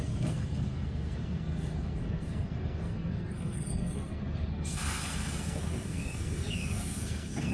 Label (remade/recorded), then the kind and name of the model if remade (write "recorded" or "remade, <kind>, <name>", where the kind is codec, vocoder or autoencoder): remade, codec, SNAC